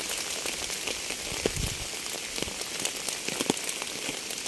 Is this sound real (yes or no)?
yes